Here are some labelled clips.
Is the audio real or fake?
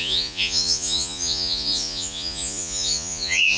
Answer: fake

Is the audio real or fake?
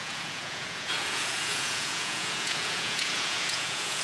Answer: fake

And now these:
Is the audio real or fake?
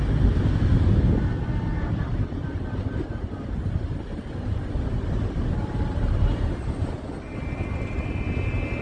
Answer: real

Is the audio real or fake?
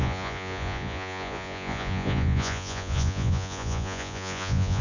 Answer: fake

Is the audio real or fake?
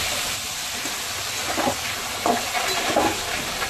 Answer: real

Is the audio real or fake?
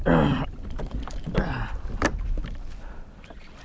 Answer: real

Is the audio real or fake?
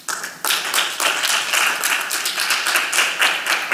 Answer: real